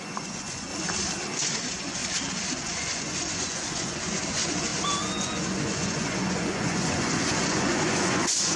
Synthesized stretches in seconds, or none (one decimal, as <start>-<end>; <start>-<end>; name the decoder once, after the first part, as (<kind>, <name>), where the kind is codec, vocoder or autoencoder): 0.0-0.7 (vocoder, Vocos); 1.4-2.0; 2.5-8.6